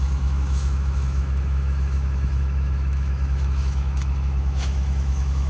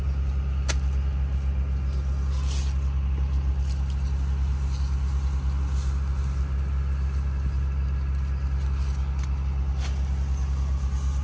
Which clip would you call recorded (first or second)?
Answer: second